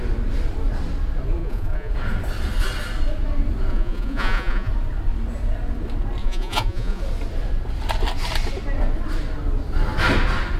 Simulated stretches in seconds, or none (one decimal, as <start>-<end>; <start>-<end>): 1.4-1.9; 3.7-4.7; 6.2-7.0